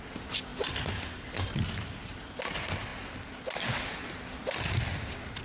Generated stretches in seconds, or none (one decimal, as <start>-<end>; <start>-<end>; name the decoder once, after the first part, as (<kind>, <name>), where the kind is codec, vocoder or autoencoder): none